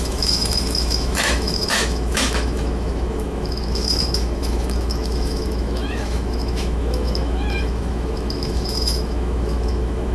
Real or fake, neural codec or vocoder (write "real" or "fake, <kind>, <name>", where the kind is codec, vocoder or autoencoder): fake, autoencoder, DAC-VAE